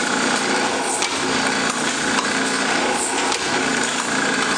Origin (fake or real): real